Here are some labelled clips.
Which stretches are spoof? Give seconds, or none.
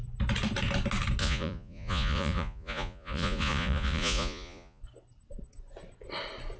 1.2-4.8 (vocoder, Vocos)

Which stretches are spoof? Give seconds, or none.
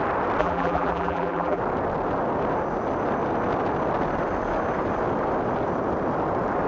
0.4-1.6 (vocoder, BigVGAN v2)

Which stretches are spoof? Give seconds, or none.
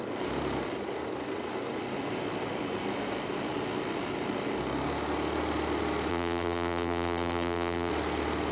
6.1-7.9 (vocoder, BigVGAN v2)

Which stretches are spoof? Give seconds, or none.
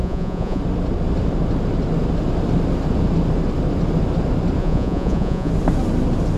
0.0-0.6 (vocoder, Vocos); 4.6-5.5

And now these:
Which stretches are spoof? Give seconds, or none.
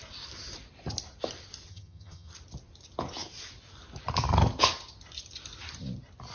1.7-2.3 (vocoder, HiFi-GAN)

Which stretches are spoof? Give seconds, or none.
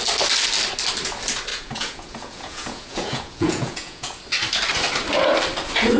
1.5-4.2 (vocoder, Vocos)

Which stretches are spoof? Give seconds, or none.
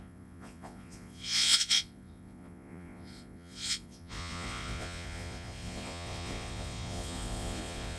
0.0-8.0 (vocoder, Vocos)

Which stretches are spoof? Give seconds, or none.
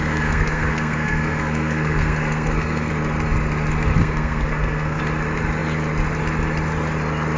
0.0-2.9 (codec, SNAC); 4.0-5.0